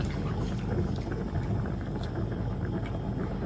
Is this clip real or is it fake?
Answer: real